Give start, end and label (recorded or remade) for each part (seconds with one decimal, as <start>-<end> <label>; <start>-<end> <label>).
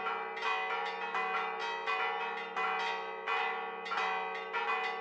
0.0-5.0 recorded